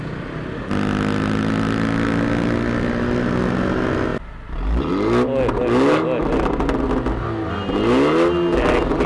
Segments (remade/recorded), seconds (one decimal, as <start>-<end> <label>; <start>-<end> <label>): 0.0-9.1 recorded